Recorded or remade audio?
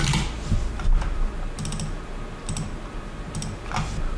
recorded